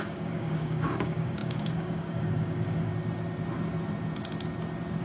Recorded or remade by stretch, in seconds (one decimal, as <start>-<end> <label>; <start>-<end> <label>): 0.0-2.9 remade; 2.9-5.0 recorded